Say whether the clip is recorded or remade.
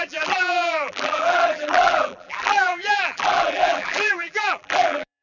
remade